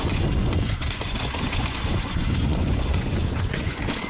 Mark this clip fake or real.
fake